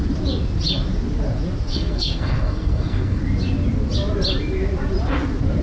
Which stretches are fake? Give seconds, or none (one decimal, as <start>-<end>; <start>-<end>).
1.7-3.2

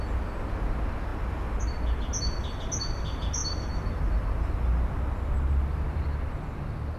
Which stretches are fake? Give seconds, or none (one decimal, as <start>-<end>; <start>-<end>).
none

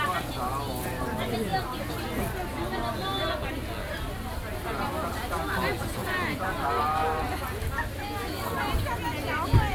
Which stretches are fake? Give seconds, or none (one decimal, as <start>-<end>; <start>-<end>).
none

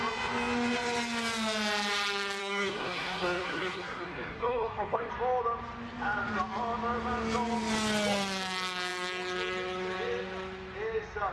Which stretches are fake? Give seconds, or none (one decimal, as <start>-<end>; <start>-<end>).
2.4-5.1

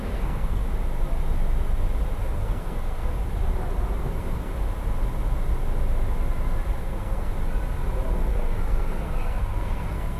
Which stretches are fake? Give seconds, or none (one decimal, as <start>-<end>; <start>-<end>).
0.0-0.6; 2.2-3.2; 4.0-4.5; 6.8-7.3; 8.1-10.2